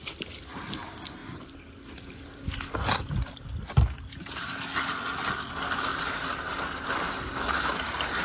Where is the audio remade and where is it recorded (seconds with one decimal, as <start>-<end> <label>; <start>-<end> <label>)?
0.0-5.9 recorded; 5.9-8.2 remade